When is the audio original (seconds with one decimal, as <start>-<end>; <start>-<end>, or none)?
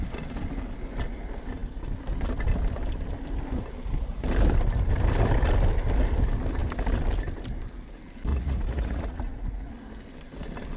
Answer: 0.0-8.3; 9.7-10.8